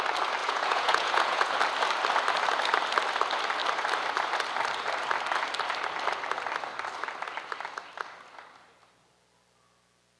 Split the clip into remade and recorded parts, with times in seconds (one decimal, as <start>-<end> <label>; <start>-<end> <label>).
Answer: 0.0-0.4 recorded; 0.4-1.5 remade; 1.5-10.2 recorded